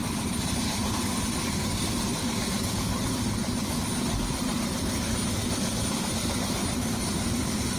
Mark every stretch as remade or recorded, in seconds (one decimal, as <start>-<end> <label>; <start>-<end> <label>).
0.0-1.4 remade; 1.4-2.1 recorded; 2.1-2.7 remade; 2.7-7.8 recorded